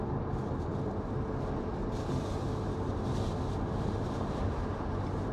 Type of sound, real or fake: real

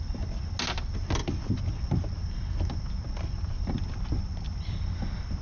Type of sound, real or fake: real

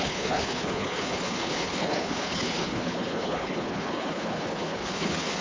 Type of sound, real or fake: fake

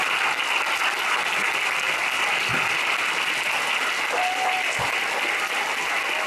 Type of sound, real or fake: real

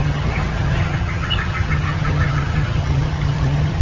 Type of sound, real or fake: fake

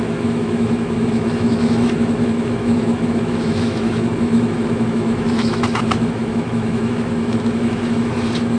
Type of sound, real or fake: fake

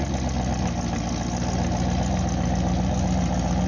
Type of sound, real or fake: real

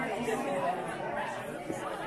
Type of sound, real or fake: real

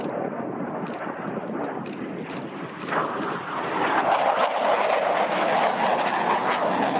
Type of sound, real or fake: real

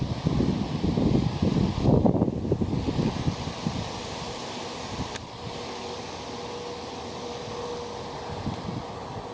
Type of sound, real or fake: real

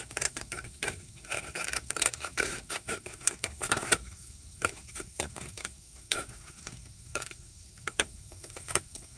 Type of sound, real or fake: fake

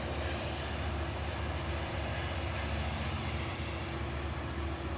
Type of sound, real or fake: fake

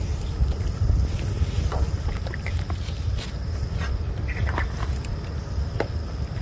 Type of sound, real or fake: real